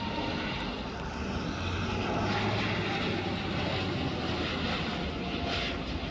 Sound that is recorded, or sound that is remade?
recorded